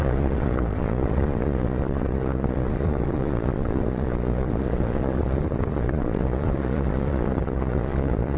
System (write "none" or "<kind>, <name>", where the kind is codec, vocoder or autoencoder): vocoder, Vocos